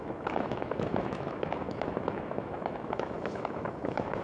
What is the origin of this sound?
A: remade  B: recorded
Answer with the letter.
A